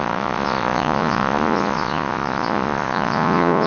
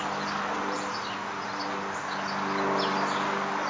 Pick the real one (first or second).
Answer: second